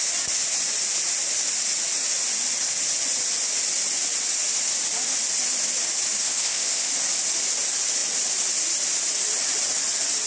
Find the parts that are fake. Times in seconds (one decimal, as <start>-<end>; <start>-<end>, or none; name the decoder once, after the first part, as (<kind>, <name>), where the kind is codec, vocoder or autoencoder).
6.2-6.9 (codec, ZipCodec)